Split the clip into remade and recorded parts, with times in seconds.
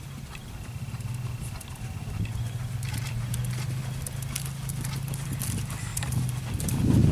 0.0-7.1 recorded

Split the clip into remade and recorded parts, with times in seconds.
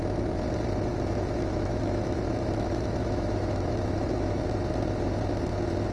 0.0-0.9 recorded; 0.9-4.4 remade; 4.4-5.9 recorded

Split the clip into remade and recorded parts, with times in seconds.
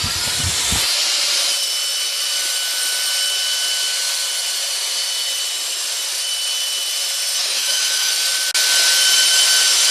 0.0-7.4 recorded; 7.4-8.1 remade; 8.1-9.9 recorded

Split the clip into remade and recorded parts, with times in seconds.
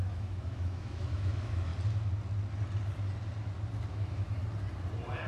0.0-1.7 remade; 1.7-3.9 recorded; 3.9-4.4 remade; 4.4-5.3 recorded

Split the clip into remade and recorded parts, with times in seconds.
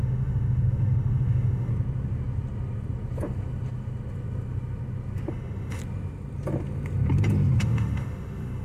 0.0-1.7 remade; 1.7-5.3 recorded; 5.3-5.8 remade; 5.8-7.6 recorded; 7.6-8.6 remade